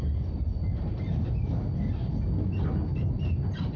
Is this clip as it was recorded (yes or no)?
yes